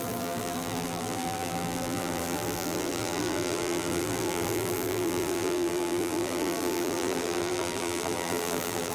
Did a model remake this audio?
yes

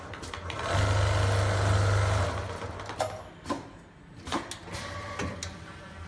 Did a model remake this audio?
no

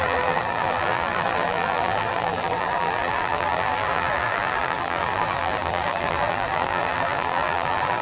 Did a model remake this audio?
yes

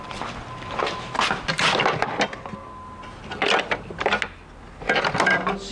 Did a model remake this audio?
no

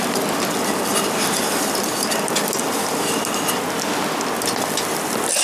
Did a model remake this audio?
no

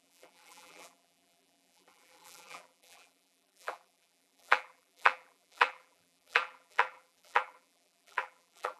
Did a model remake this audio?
yes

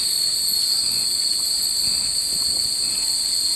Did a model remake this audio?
no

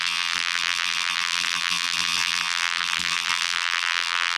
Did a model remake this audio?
yes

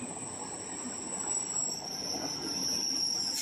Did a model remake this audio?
no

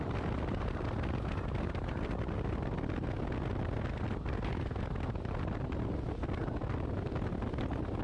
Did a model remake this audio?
no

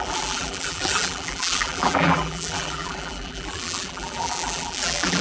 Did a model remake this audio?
yes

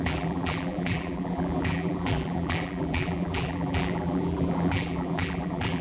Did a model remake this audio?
yes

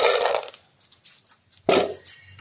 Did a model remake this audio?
no